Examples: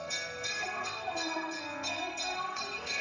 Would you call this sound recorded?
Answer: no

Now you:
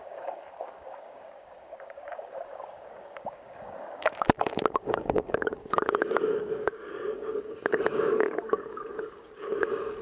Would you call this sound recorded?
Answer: no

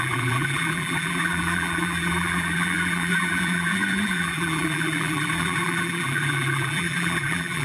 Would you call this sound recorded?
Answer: no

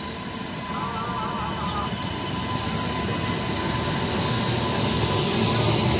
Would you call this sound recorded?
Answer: yes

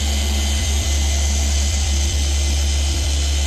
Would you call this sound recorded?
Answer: no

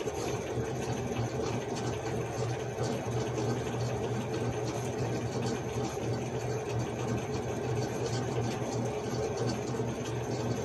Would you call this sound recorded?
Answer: yes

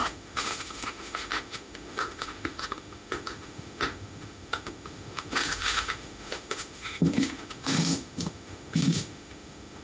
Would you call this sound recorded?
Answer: no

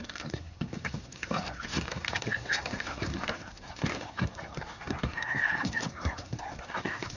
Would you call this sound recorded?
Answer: no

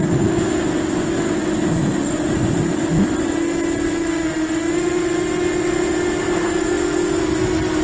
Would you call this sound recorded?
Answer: yes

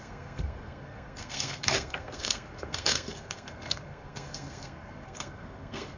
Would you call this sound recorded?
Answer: no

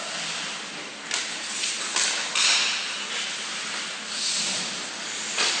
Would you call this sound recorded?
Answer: yes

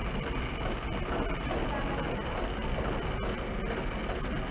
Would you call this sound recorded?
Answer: yes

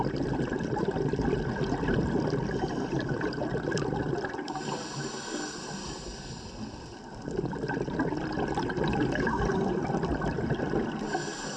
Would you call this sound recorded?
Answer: yes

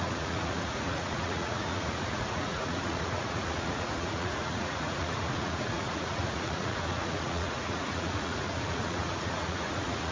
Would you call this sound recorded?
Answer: no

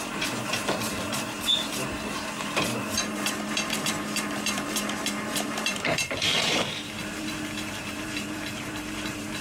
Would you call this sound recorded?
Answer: no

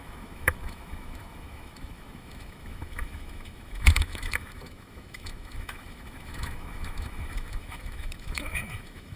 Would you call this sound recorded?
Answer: no